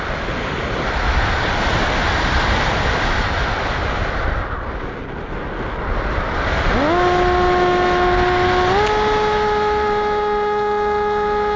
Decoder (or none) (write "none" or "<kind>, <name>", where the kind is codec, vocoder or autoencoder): none